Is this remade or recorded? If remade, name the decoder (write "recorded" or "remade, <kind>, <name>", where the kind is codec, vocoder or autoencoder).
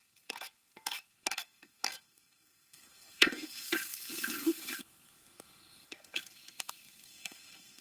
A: remade, codec, SNAC